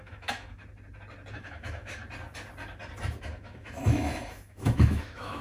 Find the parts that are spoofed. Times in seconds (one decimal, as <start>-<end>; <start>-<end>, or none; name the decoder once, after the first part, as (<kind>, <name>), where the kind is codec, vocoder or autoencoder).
0.0-0.6 (autoencoder, DAC-VAE); 1.3-2.0; 3.2-5.4